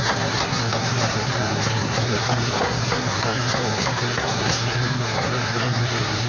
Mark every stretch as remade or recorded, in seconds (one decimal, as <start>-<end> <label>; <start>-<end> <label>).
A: 0.0-6.3 remade